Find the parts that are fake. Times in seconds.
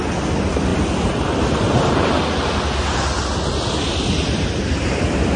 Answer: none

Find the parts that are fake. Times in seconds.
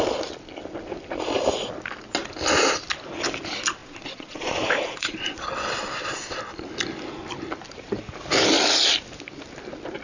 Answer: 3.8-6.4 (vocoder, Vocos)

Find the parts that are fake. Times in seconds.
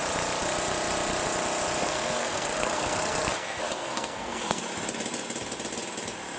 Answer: 1.8-4.6 (codec, SNAC)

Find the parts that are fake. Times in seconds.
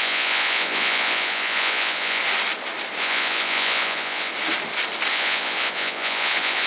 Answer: 0.0-2.2 (vocoder, Vocos); 3.0-4.3; 5.1-6.7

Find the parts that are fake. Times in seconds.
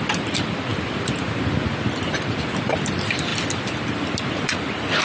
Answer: none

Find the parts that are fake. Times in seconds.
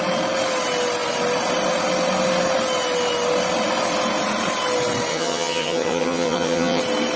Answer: 5.1-6.8 (vocoder, HiFi-GAN)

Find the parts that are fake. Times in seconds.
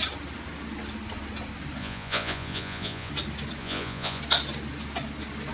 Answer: 1.8-3.1 (vocoder, Vocos); 3.6-4.2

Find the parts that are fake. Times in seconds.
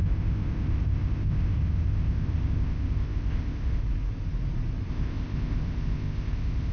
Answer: 0.0-3.8 (codec, ZipCodec); 4.9-6.7